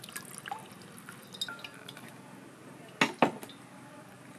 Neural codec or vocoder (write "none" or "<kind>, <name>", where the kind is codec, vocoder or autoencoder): none